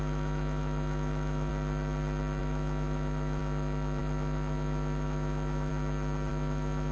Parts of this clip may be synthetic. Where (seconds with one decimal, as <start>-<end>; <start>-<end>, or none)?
0.0-1.5; 2.4-5.7; 6.3-6.9